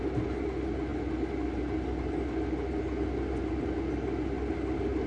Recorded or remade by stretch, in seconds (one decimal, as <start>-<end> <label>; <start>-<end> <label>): 0.0-5.1 recorded